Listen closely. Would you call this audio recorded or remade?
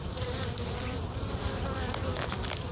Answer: remade